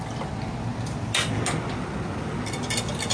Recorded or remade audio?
recorded